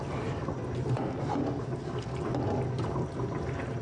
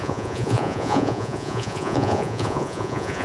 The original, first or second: first